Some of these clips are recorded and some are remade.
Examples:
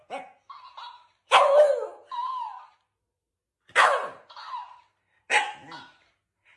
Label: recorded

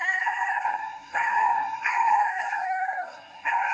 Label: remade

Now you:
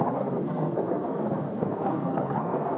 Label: remade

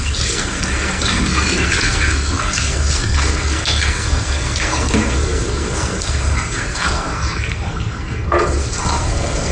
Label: remade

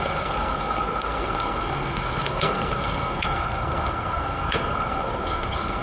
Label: remade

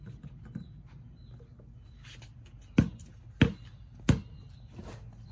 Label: recorded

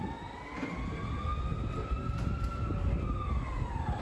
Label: recorded